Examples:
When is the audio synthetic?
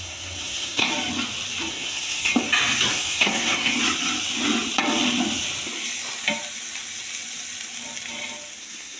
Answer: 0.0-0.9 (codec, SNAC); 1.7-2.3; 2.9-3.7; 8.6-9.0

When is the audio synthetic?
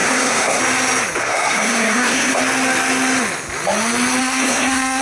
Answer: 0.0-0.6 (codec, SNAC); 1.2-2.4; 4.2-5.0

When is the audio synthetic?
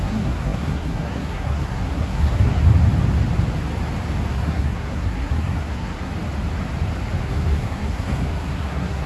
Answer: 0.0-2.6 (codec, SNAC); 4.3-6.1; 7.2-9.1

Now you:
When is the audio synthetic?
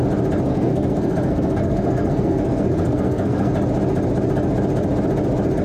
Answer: 0.5-3.5 (codec, SNAC)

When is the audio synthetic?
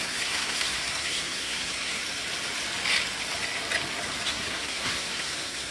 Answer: 0.0-2.0 (codec, SNAC); 4.3-5.7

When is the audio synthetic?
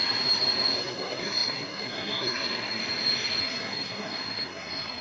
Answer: 0.8-2.8 (codec, SNAC); 3.4-5.0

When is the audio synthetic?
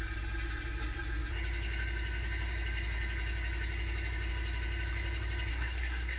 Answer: 5.5-6.2 (codec, SNAC)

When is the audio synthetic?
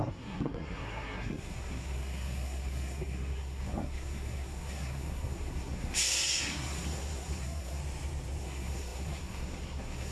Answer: 0.0-7.8 (codec, SNAC); 8.4-10.1